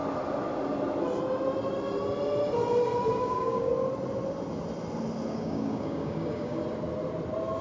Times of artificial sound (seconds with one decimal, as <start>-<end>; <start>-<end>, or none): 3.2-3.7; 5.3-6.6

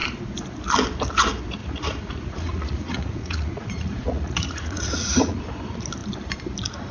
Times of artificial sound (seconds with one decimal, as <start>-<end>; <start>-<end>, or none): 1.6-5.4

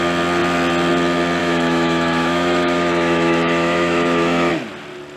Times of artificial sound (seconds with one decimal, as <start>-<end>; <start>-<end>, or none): 1.4-4.5

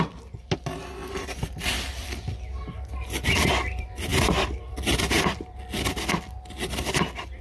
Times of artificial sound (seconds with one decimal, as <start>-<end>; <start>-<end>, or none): none

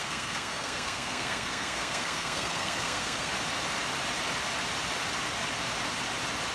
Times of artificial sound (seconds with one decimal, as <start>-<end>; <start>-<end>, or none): 0.0-3.3

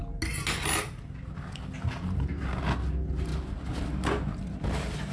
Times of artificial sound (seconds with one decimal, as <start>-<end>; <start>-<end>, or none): none